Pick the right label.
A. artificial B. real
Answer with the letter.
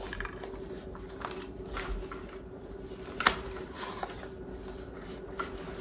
B